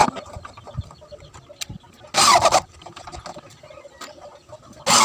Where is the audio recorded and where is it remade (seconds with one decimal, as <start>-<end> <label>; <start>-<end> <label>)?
0.0-5.0 recorded